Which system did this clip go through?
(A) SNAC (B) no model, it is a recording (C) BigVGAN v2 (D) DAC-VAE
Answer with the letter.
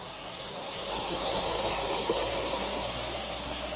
A